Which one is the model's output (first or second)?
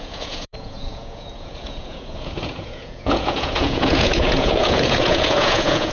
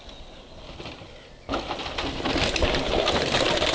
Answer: first